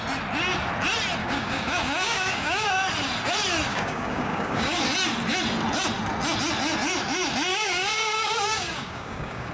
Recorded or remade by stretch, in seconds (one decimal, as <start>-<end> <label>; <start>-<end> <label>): 0.0-1.2 recorded; 1.2-2.7 remade; 2.7-3.7 recorded; 3.7-4.8 remade; 4.8-7.5 recorded; 7.5-9.5 remade

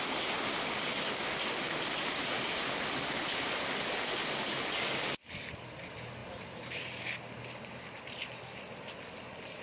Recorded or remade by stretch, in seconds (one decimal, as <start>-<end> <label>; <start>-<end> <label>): 0.0-9.6 recorded

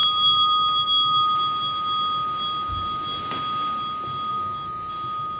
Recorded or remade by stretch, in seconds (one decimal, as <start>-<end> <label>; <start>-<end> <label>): 0.0-4.3 recorded; 4.3-4.9 remade; 4.9-5.4 recorded

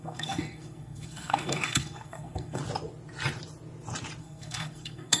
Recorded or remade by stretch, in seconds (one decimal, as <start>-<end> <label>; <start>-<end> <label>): 0.0-2.6 remade; 2.6-4.2 recorded; 4.2-5.2 remade

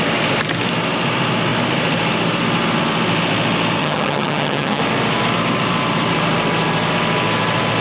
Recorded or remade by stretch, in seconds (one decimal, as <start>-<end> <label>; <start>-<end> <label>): 0.0-3.8 recorded; 3.8-4.8 remade; 4.8-7.8 recorded

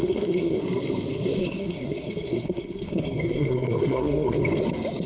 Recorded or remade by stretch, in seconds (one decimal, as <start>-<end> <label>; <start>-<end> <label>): 0.0-0.6 remade; 0.6-1.4 recorded; 1.4-4.4 remade; 4.4-5.1 recorded